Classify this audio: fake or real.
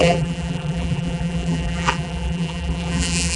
fake